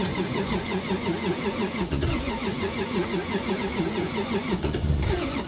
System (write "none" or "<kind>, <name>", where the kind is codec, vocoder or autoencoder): vocoder, Vocos